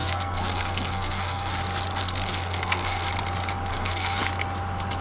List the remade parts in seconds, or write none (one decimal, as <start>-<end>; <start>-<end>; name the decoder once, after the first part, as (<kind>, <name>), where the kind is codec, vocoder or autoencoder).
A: 0.0-1.6 (codec, SNAC); 2.0-3.1; 3.7-4.2